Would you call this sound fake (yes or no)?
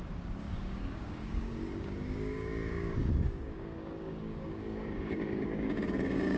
yes